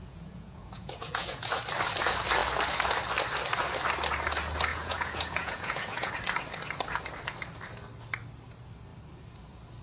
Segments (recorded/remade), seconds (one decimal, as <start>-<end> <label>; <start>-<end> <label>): 0.0-1.5 remade; 1.5-4.7 recorded; 4.7-6.1 remade; 6.1-9.8 recorded